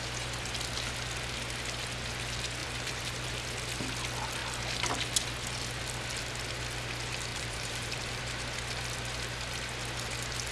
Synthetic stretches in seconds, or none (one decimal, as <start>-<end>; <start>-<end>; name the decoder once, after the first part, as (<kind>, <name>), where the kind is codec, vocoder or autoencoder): 2.6-3.3 (vocoder, BigVGAN v2); 7.3-8.2